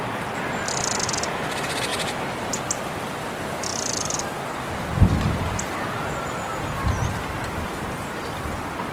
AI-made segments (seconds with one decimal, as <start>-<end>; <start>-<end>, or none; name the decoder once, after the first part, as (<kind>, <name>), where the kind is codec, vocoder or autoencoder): 0.0-8.9 (vocoder, BigVGAN v2)